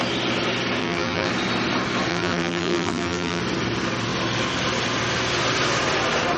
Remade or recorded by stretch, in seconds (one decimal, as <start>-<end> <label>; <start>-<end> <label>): 0.0-0.8 recorded; 0.8-1.3 remade; 1.3-2.1 recorded; 2.1-3.4 remade; 3.4-6.4 recorded